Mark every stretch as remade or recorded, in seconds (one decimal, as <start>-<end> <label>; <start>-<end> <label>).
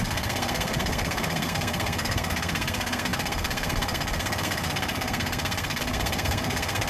0.0-6.9 remade